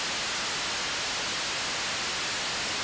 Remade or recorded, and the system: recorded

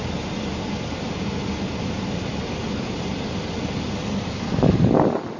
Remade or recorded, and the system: recorded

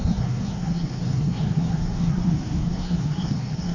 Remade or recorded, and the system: remade, codec, SNAC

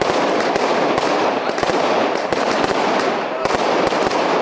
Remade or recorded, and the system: recorded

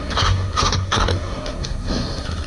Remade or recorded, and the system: remade, codec, SNAC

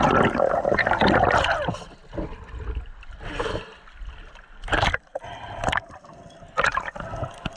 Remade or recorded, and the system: recorded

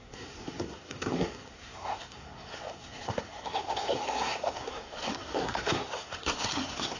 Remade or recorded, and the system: remade, codec, SNAC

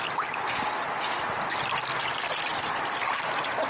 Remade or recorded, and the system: recorded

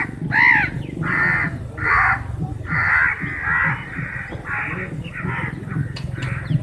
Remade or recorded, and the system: recorded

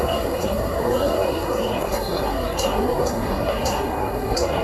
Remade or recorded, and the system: remade, codec, SNAC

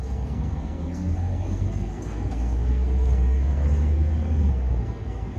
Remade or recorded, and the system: remade, codec, SNAC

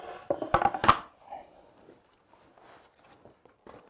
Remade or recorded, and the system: recorded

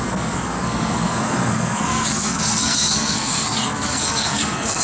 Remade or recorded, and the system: remade, codec, SNAC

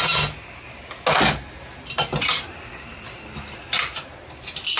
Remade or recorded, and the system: recorded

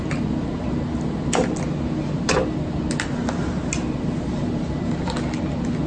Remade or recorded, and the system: recorded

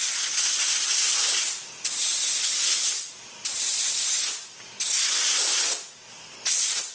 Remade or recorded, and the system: recorded